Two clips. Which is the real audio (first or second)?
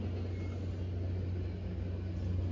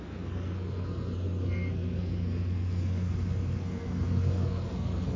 first